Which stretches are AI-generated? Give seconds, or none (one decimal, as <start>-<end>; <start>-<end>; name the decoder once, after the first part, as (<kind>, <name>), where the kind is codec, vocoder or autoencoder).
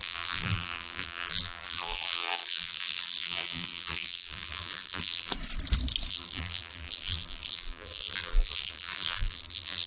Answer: 0.0-5.3 (vocoder, BigVGAN v2); 6.1-9.9